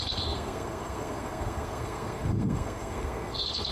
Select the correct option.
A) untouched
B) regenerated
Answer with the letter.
B